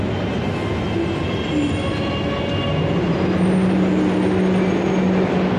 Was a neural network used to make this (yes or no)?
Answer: no